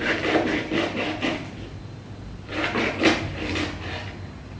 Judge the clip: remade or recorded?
recorded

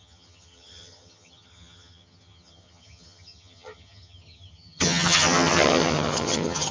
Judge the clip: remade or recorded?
remade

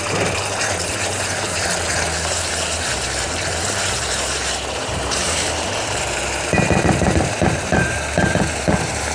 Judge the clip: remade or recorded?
remade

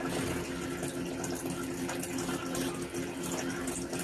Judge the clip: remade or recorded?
recorded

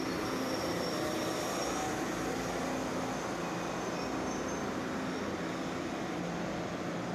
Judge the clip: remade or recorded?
recorded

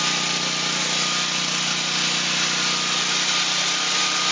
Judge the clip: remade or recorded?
recorded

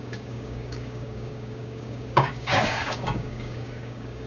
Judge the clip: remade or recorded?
remade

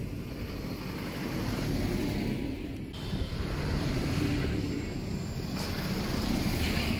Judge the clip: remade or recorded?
recorded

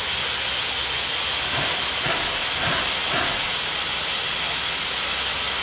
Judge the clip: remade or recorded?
recorded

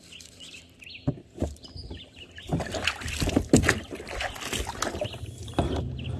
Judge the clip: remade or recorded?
recorded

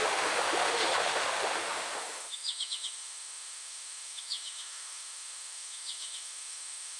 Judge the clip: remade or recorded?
remade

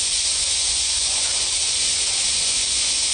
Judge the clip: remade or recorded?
remade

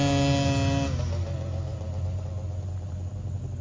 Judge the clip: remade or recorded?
recorded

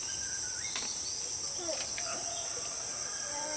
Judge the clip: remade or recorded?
recorded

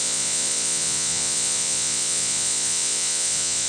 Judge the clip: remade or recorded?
remade